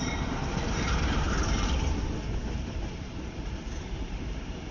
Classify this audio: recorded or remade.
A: remade